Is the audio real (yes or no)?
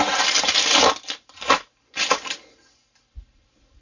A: yes